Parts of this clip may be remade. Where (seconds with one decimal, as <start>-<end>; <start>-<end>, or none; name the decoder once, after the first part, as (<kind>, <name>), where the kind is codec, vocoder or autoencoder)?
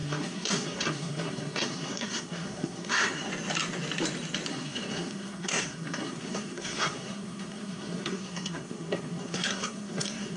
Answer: 0.0-3.3 (codec, SNAC); 4.5-10.4